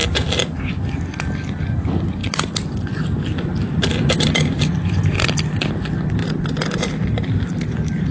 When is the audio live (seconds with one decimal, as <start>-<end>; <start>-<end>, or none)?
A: 0.0-2.2; 4.6-6.2; 6.8-8.1